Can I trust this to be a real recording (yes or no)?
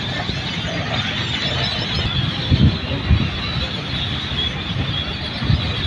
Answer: yes